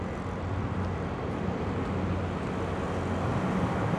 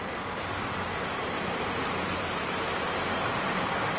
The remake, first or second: second